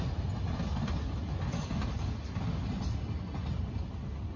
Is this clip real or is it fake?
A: real